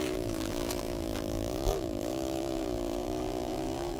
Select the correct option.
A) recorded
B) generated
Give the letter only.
B